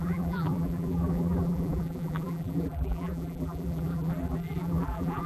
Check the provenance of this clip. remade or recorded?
remade